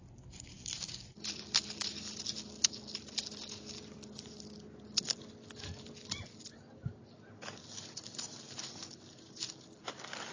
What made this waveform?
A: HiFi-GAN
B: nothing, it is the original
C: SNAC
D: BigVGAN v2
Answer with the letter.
B